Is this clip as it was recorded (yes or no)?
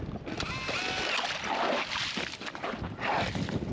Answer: yes